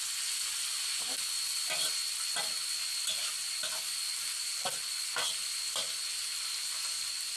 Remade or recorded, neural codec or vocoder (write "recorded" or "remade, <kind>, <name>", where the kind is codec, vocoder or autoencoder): recorded